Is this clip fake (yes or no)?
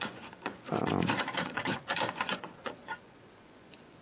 yes